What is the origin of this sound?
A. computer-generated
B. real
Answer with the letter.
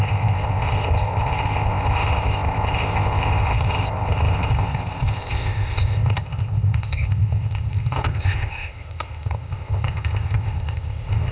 A